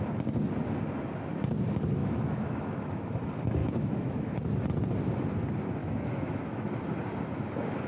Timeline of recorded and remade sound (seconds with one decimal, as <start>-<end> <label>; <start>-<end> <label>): 0.0-2.0 recorded; 2.0-3.1 remade; 3.1-3.6 recorded; 3.6-4.3 remade; 4.3-5.8 recorded; 5.8-6.7 remade; 6.7-7.9 recorded